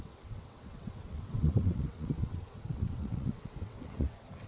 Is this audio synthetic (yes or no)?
yes